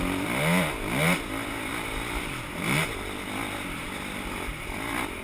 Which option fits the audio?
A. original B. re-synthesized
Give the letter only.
A